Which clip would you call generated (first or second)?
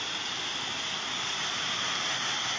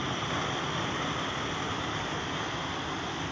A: first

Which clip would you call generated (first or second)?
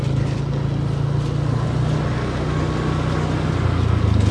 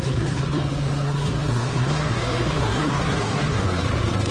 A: second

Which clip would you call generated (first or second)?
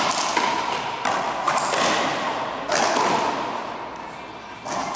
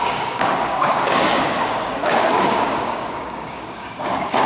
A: second